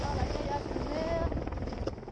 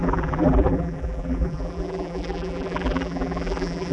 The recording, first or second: first